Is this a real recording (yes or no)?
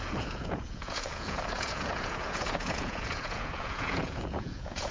no